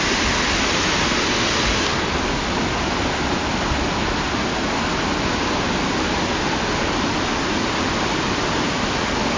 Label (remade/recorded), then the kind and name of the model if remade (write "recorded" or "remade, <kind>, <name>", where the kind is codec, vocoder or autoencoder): recorded